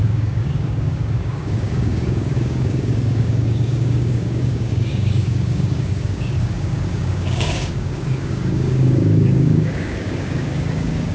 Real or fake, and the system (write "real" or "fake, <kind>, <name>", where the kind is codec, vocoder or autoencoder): fake, codec, DAC